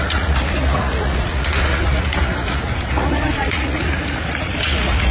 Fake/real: fake